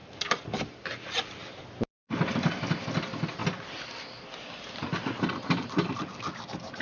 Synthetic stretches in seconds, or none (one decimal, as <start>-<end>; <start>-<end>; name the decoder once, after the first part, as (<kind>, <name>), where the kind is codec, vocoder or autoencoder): 1.4-2.2 (vocoder, BigVGAN v2)